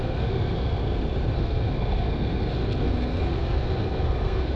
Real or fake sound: fake